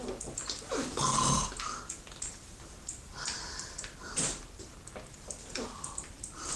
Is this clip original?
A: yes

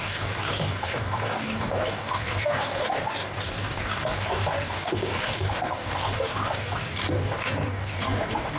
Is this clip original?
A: no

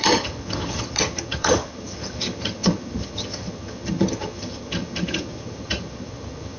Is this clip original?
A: no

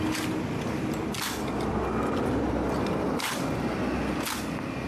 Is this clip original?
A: yes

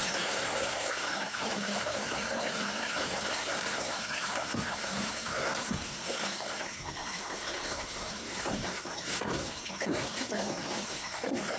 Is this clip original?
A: no